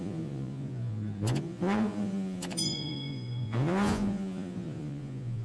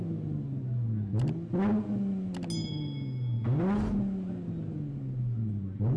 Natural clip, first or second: second